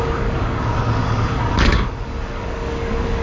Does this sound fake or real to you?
fake